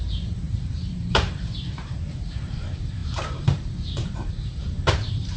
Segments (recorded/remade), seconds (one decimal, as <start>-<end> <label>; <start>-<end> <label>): 0.0-5.4 remade